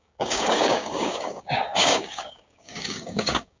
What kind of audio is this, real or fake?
fake